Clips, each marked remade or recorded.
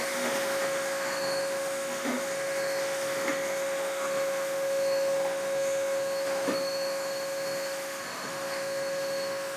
remade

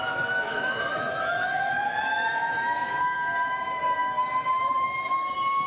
remade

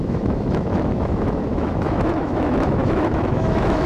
remade